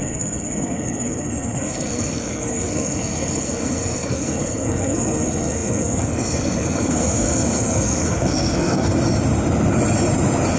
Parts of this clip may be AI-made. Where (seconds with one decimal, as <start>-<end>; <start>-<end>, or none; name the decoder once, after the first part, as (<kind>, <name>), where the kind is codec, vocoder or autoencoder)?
0.0-8.9 (codec, SNAC)